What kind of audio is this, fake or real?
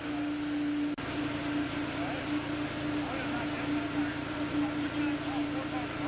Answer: real